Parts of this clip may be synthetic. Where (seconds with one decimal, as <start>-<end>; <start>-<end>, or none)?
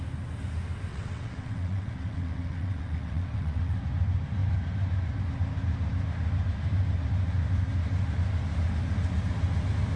0.9-3.8